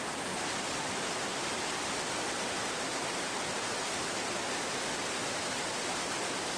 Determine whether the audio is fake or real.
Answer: real